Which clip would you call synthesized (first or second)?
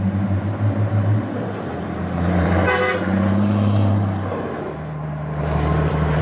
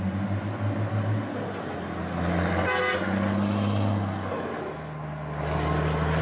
first